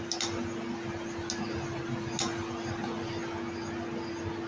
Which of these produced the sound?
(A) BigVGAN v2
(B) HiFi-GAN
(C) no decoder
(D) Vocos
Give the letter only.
C